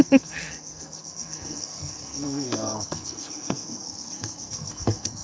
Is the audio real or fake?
fake